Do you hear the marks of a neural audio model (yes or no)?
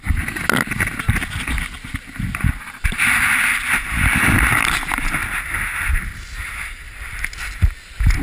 no